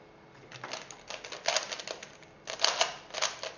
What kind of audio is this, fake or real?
real